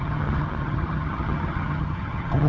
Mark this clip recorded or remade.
remade